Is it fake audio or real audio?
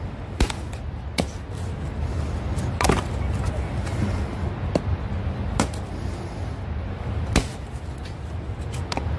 real